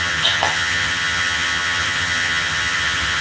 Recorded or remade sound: remade